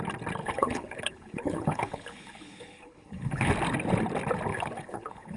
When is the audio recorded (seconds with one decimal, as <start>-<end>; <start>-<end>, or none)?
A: 0.0-0.4; 3.5-4.5